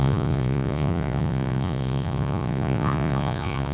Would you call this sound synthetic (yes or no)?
yes